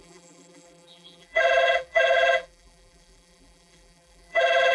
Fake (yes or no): yes